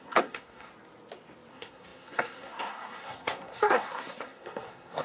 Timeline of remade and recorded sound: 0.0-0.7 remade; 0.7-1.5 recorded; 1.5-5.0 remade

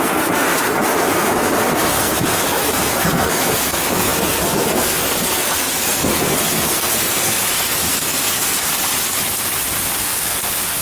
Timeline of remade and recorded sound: 0.0-8.7 remade; 8.7-10.0 recorded; 10.0-10.8 remade

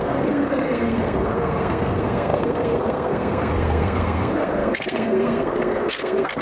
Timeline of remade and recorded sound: 0.0-6.4 remade

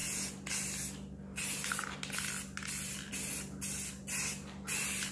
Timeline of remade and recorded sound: 0.0-5.1 recorded

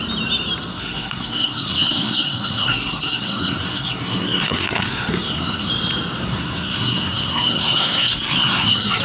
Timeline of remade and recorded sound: 0.0-0.7 recorded; 0.7-5.7 remade; 5.7-6.2 recorded; 6.2-9.0 remade

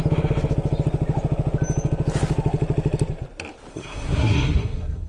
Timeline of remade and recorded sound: 0.0-3.7 recorded; 3.7-5.1 remade